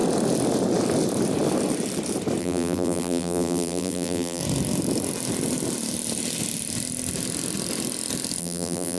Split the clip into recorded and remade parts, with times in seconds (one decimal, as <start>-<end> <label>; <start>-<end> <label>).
0.0-2.4 recorded; 2.4-4.4 remade; 4.4-8.4 recorded; 8.4-9.0 remade